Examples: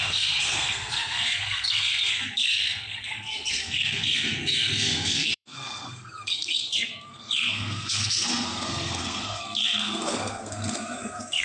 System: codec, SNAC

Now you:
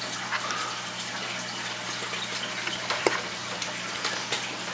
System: none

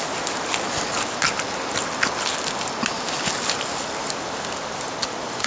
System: none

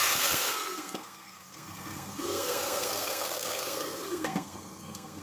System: codec, SNAC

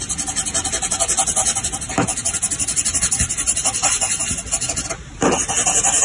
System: none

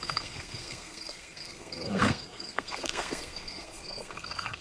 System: codec, SNAC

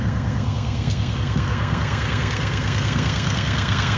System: codec, SNAC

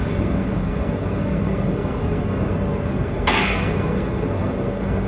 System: codec, SNAC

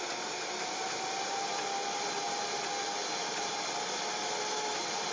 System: none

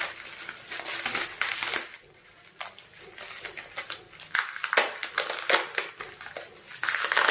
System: none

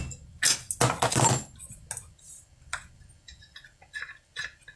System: none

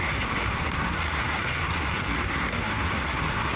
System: codec, SNAC